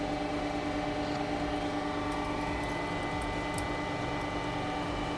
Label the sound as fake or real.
real